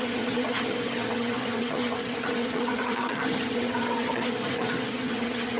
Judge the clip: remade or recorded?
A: remade